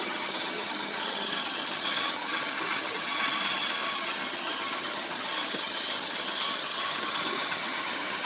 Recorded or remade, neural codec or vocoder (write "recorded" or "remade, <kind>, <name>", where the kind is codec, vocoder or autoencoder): remade, vocoder, HiFi-GAN